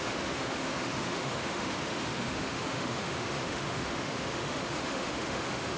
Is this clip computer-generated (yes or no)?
yes